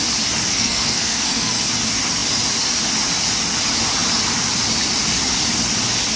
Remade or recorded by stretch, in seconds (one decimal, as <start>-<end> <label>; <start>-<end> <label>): 0.0-0.5 recorded; 0.5-1.6 remade; 1.6-6.2 recorded